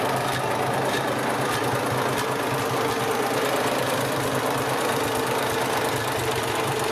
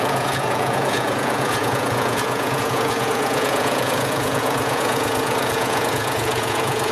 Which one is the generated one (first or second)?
second